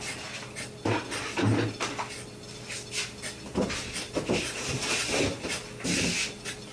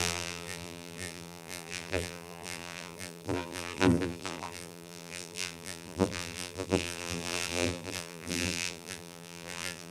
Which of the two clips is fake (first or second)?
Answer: second